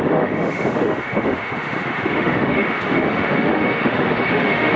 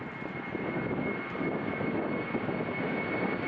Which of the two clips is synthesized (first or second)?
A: first